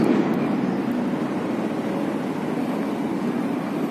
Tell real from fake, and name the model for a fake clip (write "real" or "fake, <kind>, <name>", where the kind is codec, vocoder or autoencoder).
real